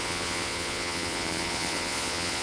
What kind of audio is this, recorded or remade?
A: remade